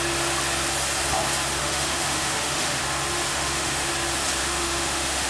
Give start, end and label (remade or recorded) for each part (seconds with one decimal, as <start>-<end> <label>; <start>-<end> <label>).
0.0-1.6 recorded; 1.6-2.8 remade; 2.8-3.3 recorded; 3.3-3.9 remade; 3.9-4.4 recorded; 4.4-5.3 remade